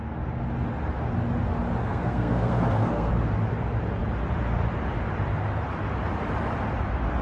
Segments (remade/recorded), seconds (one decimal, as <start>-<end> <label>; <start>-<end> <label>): 0.0-1.8 recorded; 1.8-3.1 remade; 3.1-7.2 recorded